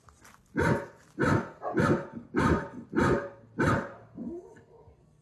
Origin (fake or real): real